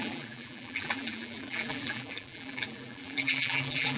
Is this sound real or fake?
fake